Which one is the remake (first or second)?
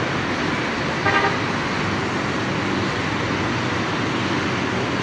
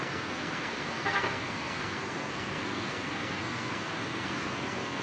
second